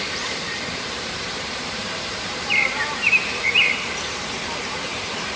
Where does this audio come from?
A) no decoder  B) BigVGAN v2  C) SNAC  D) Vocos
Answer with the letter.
B